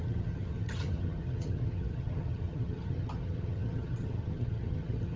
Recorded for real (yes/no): no